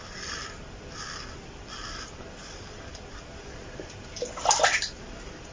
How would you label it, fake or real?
fake